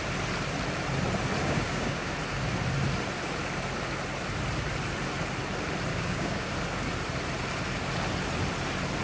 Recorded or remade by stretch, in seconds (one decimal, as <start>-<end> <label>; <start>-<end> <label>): 0.0-1.4 recorded; 1.4-2.1 remade; 2.1-5.9 recorded; 5.9-6.5 remade; 6.5-9.0 recorded

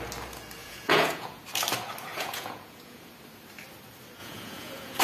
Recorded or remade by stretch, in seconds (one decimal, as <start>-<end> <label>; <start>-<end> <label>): 0.0-0.6 recorded; 0.6-1.4 remade; 1.4-2.1 recorded; 2.1-3.1 remade; 3.1-4.2 recorded; 4.2-5.0 remade

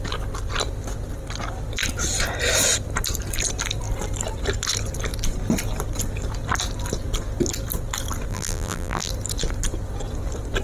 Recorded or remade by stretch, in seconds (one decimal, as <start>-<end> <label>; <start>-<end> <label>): 0.0-8.3 recorded; 8.3-9.1 remade; 9.1-10.6 recorded